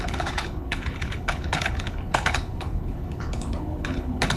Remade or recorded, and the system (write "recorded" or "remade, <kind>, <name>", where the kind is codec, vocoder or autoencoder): remade, codec, HILCodec